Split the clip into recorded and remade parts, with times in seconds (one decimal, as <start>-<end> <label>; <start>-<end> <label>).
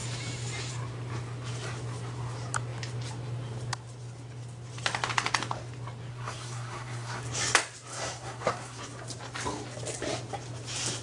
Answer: 0.0-6.1 recorded; 6.1-7.2 remade; 7.2-7.9 recorded; 7.9-8.8 remade; 8.8-11.0 recorded